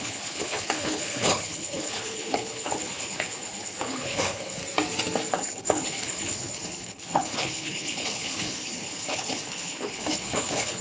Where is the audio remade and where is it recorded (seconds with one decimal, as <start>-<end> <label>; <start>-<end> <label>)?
0.0-4.6 remade; 4.6-5.3 recorded; 5.3-10.8 remade

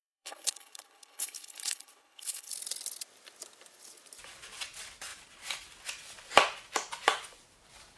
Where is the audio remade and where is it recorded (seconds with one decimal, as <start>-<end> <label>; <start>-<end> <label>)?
0.0-2.5 remade; 2.5-8.0 recorded

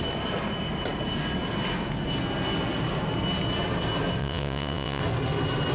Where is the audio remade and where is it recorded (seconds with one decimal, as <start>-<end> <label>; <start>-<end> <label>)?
0.0-4.2 recorded; 4.2-5.0 remade; 5.0-5.7 recorded